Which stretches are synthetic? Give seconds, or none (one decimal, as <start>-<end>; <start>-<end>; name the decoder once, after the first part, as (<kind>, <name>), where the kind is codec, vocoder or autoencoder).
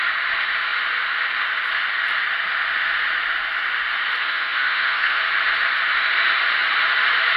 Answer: 4.2-5.2 (codec, SNAC)